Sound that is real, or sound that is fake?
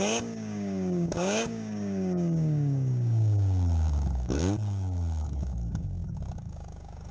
fake